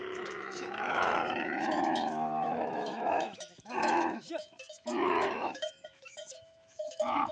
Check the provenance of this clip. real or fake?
fake